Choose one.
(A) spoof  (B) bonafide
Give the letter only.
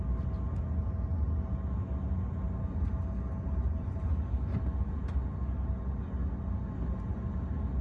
B